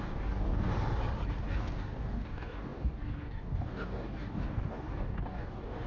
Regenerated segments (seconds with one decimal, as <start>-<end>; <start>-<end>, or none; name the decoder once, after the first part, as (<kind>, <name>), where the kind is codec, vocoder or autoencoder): 0.0-0.7 (codec, DAC); 1.3-5.9